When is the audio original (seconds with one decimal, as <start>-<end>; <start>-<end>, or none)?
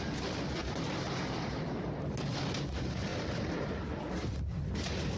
0.0-0.6; 2.0-3.1; 3.9-5.2